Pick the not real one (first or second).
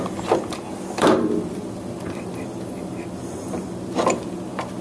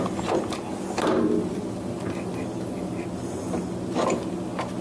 first